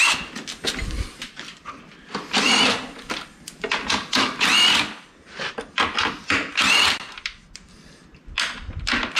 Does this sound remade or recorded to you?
recorded